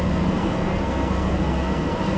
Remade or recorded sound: remade